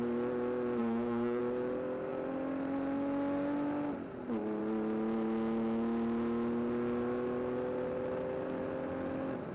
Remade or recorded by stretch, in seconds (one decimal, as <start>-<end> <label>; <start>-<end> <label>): 0.0-0.8 recorded; 0.8-1.4 remade; 1.4-9.5 recorded